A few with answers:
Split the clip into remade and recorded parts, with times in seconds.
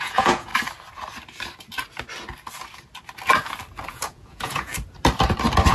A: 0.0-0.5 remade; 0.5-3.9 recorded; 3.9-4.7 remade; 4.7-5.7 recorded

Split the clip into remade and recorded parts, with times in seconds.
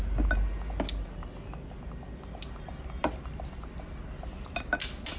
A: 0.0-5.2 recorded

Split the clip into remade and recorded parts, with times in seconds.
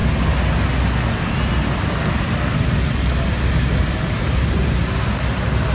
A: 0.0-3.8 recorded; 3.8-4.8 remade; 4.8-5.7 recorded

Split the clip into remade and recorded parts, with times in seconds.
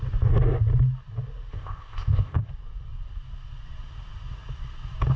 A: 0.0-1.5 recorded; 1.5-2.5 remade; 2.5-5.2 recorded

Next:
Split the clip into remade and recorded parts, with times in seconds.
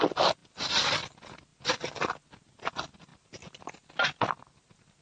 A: 0.0-5.0 recorded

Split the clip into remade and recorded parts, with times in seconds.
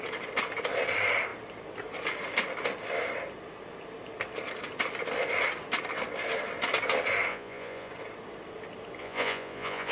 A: 0.0-7.3 recorded; 7.3-7.9 remade; 7.9-9.0 recorded; 9.0-9.9 remade